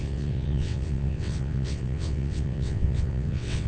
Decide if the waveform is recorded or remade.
remade